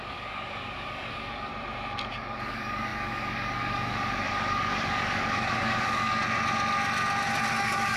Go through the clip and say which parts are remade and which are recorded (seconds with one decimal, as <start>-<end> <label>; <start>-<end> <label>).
0.0-1.5 remade; 1.5-2.1 recorded; 2.1-6.2 remade; 6.2-7.6 recorded; 7.6-8.0 remade